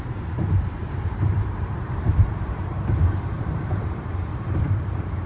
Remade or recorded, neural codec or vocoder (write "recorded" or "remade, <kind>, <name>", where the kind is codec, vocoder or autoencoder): remade, vocoder, BigVGAN v2